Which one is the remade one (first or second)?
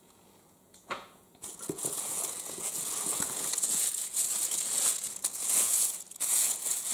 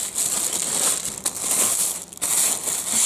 first